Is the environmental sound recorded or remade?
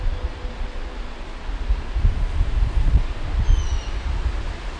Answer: recorded